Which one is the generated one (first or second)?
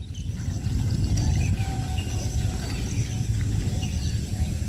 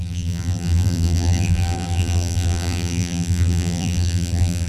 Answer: second